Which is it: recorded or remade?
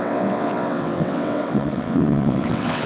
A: remade